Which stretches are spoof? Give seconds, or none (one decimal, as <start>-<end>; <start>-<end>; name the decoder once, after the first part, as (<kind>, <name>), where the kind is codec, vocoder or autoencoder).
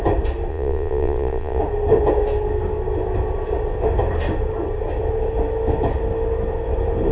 0.5-1.6 (vocoder, Vocos)